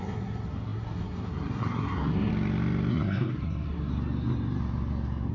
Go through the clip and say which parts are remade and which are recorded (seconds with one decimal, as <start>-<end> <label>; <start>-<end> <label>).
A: 0.0-2.3 remade; 2.3-2.9 recorded; 2.9-3.9 remade; 3.9-5.3 recorded